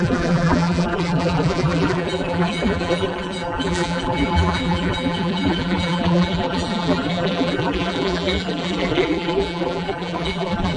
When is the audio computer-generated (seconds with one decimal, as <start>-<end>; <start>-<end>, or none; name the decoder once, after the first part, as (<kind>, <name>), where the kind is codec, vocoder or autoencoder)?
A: 0.0-10.8 (vocoder, BigVGAN v2)